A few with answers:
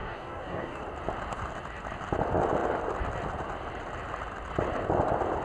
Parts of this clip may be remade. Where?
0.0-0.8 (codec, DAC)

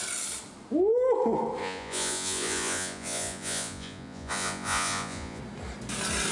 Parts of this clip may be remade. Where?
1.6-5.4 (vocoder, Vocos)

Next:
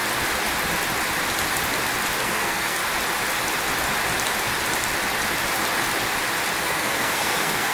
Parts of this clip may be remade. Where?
2.2-2.8 (codec, SNAC); 6.6-7.7